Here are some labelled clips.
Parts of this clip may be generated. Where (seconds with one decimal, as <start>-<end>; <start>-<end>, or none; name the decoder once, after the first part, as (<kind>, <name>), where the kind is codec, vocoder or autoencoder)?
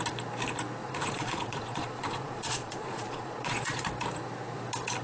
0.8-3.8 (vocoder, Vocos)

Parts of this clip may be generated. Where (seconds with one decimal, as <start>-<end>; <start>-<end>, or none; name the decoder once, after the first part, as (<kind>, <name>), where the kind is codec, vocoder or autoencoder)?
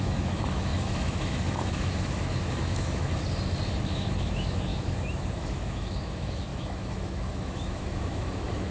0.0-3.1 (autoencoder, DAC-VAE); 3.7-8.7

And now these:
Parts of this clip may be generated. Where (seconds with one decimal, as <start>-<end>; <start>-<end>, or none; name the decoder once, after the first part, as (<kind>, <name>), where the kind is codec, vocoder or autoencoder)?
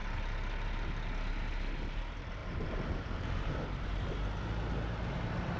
2.4-3.9 (vocoder, BigVGAN v2)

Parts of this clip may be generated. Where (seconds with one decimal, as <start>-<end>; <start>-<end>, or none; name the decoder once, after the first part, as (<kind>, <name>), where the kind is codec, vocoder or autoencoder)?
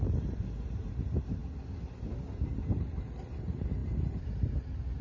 0.0-1.4 (vocoder, BigVGAN v2); 3.0-5.0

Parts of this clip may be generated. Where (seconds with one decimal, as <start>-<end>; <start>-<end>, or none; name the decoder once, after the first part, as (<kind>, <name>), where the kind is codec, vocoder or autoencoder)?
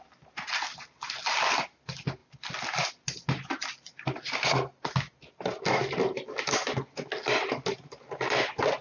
none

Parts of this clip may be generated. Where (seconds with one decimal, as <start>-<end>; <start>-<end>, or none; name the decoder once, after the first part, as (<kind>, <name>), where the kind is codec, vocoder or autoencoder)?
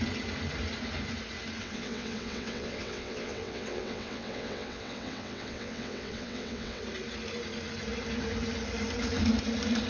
1.6-6.8 (vocoder, WaveNeXt)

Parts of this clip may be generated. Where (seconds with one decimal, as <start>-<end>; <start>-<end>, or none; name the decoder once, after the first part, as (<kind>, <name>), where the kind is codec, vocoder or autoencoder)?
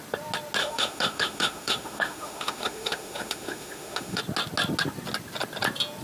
0.6-4.2 (autoencoder, DAC-VAE)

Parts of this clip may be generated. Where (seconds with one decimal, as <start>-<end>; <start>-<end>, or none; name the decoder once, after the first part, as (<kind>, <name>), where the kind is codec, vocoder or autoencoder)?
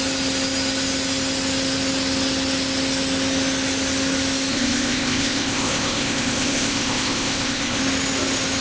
4.5-7.8 (codec, ZipCodec)